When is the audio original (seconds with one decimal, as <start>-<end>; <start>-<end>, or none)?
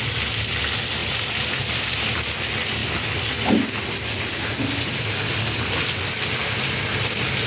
0.0-1.0; 2.2-7.5